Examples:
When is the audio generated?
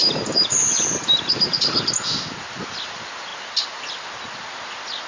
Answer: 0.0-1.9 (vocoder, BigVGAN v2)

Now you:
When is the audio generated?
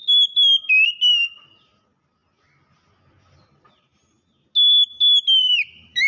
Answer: 3.3-4.0 (vocoder, BigVGAN v2); 5.4-6.1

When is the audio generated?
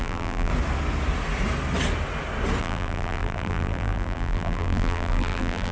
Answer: 0.0-0.5 (vocoder, BigVGAN v2); 2.6-5.7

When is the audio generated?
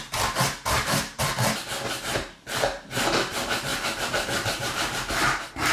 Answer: 0.0-1.3 (vocoder, BigVGAN v2); 3.3-5.7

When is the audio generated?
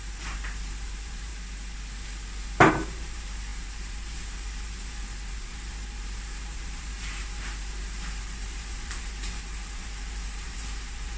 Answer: 0.0-1.3 (vocoder, BigVGAN v2); 2.7-11.2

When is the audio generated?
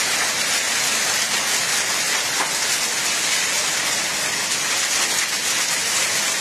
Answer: 3.0-3.8 (vocoder, BigVGAN v2)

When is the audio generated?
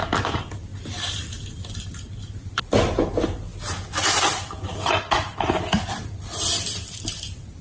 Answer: 0.0-0.7 (vocoder, BigVGAN v2); 2.2-3.5; 4.2-4.7; 5.9-7.6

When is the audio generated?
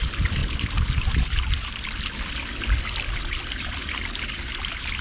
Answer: 0.0-5.0 (vocoder, BigVGAN v2)